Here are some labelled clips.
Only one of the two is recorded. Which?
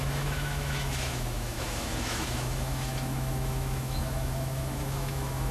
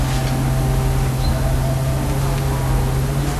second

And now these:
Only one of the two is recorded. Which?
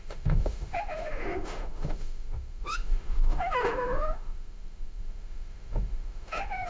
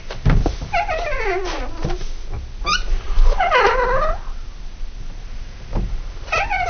second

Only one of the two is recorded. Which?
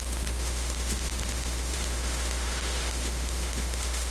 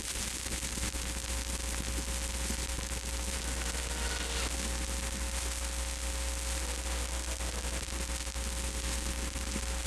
second